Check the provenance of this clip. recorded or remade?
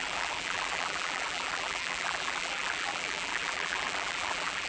remade